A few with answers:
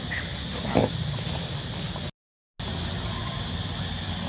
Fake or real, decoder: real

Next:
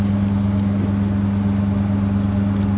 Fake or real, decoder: real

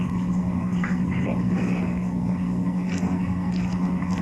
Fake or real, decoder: fake, codec, SNAC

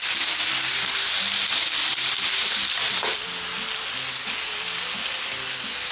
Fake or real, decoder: real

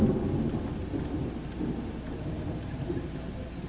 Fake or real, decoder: real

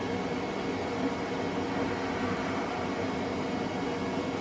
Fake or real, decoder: real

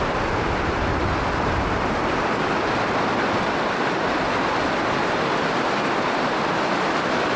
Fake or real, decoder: real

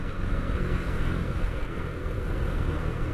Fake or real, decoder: fake, codec, SNAC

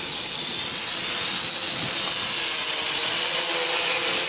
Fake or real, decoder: real